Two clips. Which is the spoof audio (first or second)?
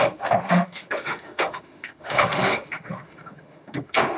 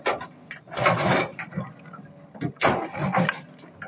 first